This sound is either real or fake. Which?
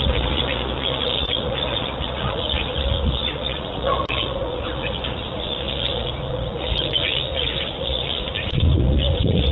fake